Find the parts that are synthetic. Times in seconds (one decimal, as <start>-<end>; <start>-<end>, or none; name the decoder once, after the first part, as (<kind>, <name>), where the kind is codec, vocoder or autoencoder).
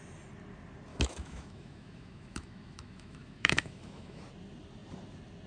0.9-4.2 (autoencoder, DAC-VAE)